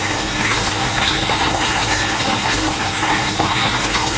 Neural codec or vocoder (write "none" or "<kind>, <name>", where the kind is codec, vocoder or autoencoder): codec, SNAC